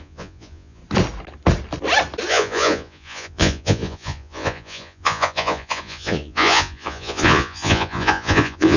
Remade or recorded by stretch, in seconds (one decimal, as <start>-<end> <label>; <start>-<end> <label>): 0.0-0.8 remade; 0.8-2.3 recorded; 2.3-8.8 remade